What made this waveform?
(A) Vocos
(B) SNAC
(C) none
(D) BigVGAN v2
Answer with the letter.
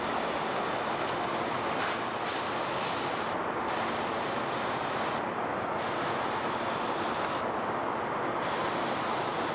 C